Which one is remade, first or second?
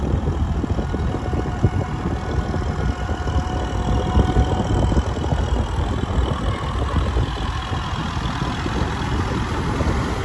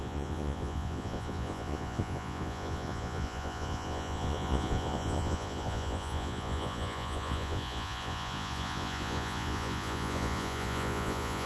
second